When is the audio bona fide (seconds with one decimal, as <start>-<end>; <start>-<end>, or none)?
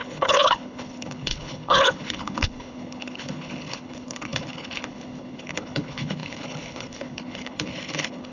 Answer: none